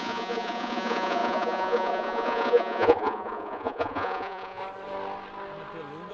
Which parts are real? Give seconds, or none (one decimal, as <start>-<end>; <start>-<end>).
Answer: 4.6-6.1